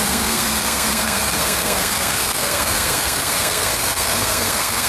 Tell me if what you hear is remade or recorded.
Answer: remade